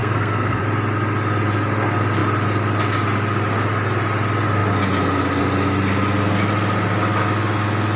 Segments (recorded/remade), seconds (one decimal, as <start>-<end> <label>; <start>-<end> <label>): 0.0-0.6 remade; 0.6-8.0 recorded